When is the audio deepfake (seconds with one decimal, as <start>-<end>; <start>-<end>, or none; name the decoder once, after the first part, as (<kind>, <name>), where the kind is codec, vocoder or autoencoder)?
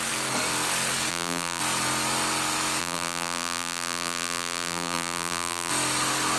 1.1-1.6 (vocoder, BigVGAN v2); 2.8-5.7